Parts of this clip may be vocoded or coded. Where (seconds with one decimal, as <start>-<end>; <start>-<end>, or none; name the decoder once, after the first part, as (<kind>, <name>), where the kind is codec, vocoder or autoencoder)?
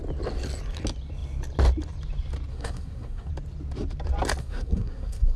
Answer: 2.5-3.3 (codec, SNAC); 4.4-5.4